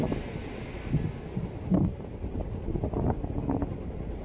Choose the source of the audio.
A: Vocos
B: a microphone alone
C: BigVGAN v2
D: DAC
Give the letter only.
B